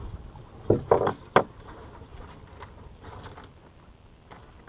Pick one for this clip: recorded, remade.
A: recorded